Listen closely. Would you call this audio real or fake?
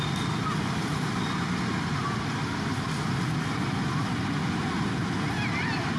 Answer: real